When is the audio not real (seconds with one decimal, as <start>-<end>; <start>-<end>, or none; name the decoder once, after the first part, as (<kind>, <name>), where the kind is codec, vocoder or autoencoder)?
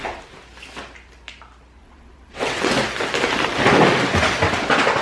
1.8-2.7 (vocoder, WaveNeXt)